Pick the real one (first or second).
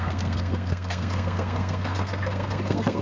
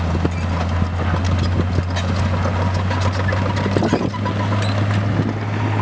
second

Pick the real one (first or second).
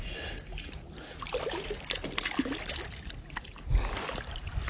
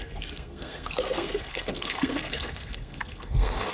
first